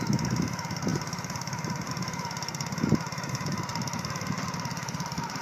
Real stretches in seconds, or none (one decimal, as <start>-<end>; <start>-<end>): 0.0-0.9; 1.9-3.7